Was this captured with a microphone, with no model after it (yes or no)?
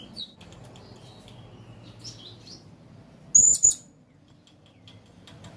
yes